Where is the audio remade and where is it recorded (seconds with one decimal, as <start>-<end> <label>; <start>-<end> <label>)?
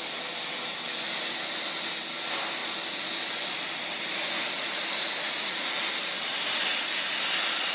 0.0-7.7 recorded